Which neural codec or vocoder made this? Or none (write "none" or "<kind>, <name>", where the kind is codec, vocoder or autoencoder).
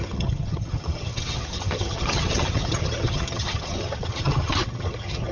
vocoder, HiFi-GAN